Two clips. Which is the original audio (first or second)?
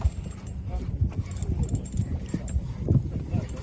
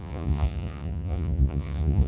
first